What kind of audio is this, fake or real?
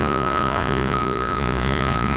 fake